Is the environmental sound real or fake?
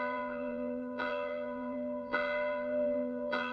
fake